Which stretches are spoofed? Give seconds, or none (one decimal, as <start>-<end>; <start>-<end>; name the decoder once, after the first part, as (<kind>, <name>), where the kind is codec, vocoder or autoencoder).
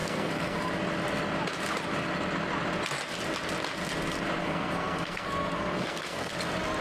0.0-0.7 (codec, SNAC); 4.4-6.3